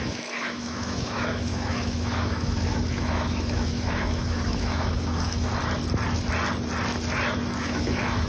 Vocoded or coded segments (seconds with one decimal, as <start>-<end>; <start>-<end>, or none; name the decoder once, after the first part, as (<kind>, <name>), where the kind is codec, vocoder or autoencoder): 0.0-5.5 (autoencoder, DAC-VAE); 7.6-8.3